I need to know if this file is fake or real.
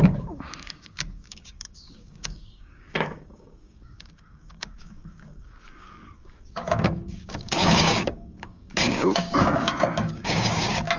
fake